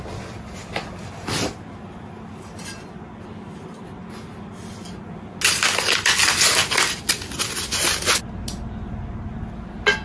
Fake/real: real